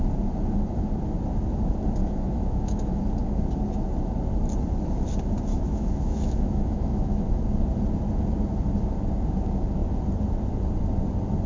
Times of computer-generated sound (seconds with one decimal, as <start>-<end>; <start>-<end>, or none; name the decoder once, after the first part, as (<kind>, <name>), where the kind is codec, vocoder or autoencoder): 2.0-3.0 (autoencoder, DAC-VAE); 5.5-7.4